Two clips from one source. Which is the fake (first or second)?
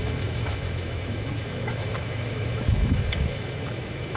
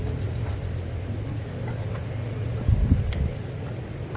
first